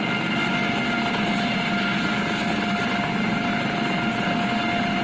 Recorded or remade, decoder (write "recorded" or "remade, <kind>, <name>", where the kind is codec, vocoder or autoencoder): recorded